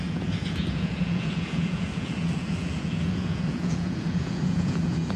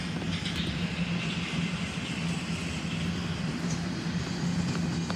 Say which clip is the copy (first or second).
first